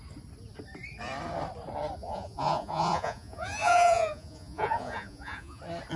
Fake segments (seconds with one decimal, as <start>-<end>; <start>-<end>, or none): 2.0-5.6